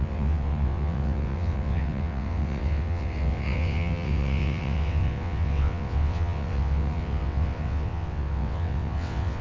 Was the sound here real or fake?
fake